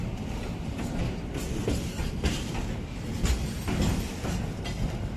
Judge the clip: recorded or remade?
recorded